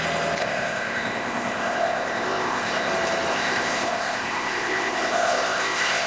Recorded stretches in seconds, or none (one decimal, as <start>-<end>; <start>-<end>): 0.0-0.4; 2.9-3.3